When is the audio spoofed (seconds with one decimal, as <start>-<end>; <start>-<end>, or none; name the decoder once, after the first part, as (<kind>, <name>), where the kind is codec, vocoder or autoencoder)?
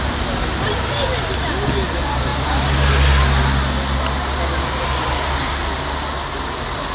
none